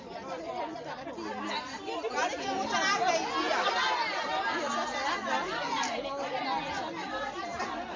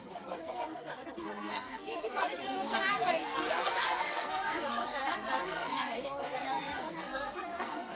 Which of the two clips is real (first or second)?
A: first